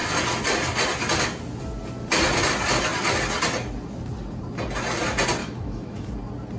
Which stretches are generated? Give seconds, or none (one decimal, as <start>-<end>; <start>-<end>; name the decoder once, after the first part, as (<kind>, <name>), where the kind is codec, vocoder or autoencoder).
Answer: 5.4-6.1 (autoencoder, DAC-VAE)